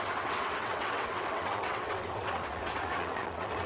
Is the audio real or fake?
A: fake